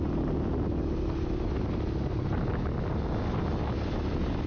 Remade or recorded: recorded